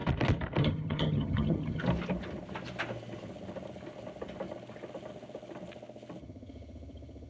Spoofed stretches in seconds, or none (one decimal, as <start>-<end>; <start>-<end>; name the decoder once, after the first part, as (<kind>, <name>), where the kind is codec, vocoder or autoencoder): 0.6-1.8 (vocoder, HiFi-GAN); 6.2-7.3